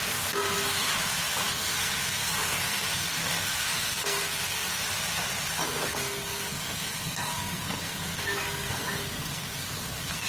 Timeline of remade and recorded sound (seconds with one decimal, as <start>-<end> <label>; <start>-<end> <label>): 0.0-0.9 remade; 0.9-1.5 recorded; 1.5-4.8 remade; 4.8-5.6 recorded; 5.6-10.3 remade